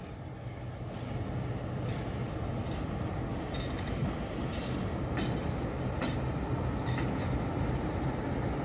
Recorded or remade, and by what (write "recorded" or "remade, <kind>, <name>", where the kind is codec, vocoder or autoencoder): recorded